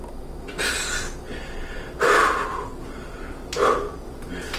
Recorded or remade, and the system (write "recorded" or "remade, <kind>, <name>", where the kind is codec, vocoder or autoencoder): recorded